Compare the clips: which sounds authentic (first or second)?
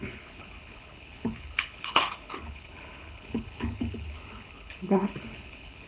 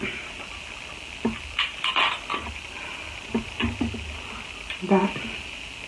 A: second